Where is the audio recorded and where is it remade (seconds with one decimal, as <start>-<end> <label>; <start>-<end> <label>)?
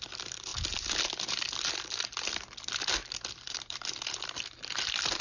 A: 0.0-0.5 remade; 0.5-3.1 recorded; 3.1-5.2 remade